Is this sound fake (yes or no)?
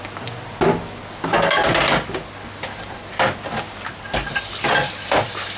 no